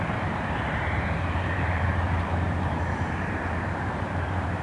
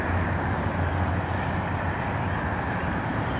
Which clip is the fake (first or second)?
first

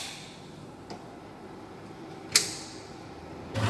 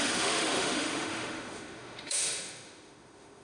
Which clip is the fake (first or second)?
second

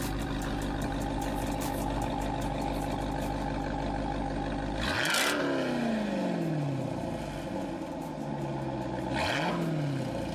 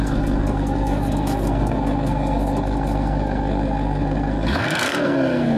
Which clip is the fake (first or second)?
second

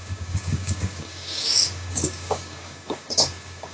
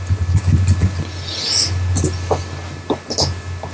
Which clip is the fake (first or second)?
first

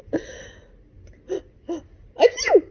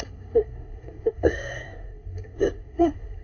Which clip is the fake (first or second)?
second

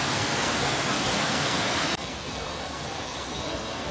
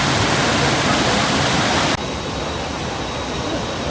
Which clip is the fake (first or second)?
first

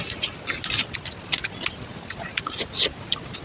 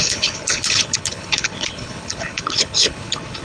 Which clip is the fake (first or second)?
second